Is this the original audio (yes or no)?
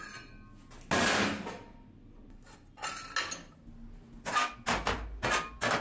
yes